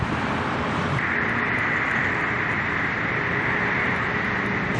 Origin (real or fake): fake